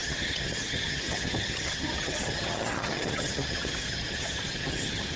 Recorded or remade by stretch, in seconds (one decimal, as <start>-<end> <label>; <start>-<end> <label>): 0.0-5.2 remade